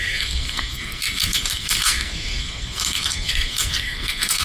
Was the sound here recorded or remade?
remade